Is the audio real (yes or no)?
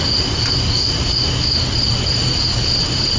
yes